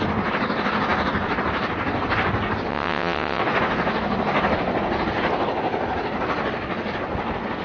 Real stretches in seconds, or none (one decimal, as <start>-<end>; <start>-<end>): 0.0-2.7; 3.4-7.6